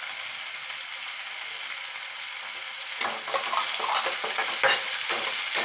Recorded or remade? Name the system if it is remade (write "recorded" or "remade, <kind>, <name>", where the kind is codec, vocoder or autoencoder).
recorded